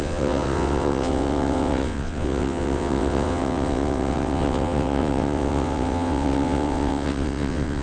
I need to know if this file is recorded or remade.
remade